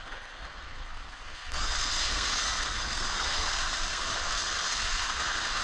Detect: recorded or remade remade